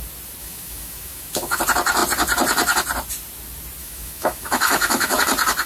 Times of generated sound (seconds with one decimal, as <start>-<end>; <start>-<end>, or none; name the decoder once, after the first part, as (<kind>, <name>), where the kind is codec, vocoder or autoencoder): 0.4-1.6 (autoencoder, DAC-VAE); 3.8-5.2